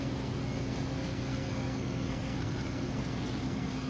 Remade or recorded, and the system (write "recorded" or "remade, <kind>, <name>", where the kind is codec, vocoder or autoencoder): remade, codec, SNAC